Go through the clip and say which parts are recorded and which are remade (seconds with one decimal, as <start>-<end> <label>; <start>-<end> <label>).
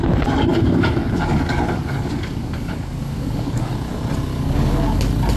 0.0-0.5 recorded; 0.5-3.7 remade; 3.7-4.3 recorded; 4.3-5.0 remade; 5.0-5.4 recorded